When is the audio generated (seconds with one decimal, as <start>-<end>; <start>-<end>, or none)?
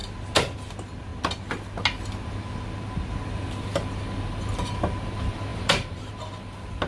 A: 5.5-6.1